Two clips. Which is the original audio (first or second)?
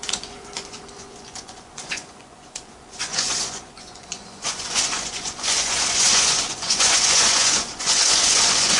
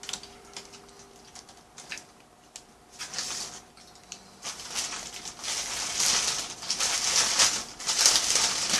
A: second